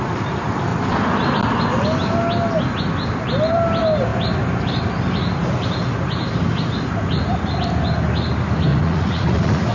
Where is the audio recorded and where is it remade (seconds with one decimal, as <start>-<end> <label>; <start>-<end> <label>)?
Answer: 0.0-8.7 recorded; 8.7-9.7 remade